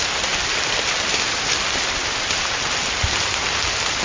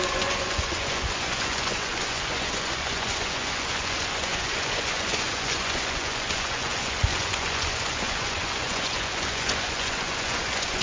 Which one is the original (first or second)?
first